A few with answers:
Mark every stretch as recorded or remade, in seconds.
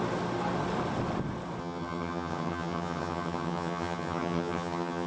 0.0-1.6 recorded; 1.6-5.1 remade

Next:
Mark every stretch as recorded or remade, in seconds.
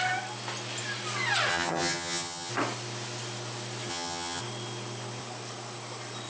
0.0-1.5 recorded; 1.5-2.5 remade; 2.5-3.9 recorded; 3.9-4.4 remade; 4.4-6.3 recorded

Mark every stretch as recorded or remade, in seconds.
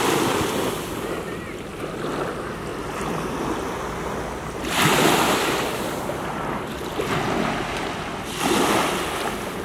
0.0-9.6 recorded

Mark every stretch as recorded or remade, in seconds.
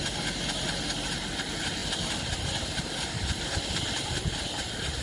0.0-5.0 recorded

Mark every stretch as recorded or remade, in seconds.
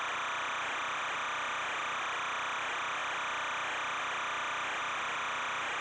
0.0-5.8 recorded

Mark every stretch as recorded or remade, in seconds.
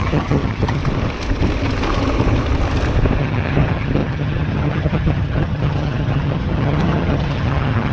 0.0-0.8 remade; 0.8-3.2 recorded; 3.2-7.9 remade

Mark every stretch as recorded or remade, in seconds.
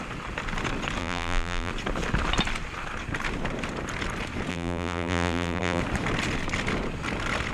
0.0-1.0 recorded; 1.0-1.7 remade; 1.7-4.5 recorded; 4.5-5.8 remade; 5.8-7.5 recorded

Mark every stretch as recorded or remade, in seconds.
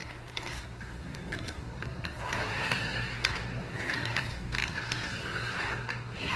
0.0-6.4 remade